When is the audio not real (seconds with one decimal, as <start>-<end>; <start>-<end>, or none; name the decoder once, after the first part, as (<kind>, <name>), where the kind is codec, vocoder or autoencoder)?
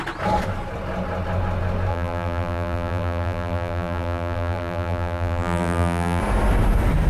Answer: 1.9-6.2 (vocoder, BigVGAN v2)